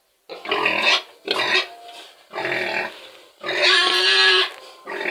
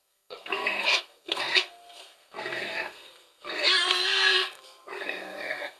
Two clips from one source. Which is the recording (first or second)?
first